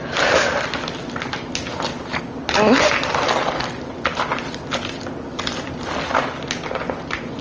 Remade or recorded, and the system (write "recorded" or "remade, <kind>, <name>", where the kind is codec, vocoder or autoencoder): recorded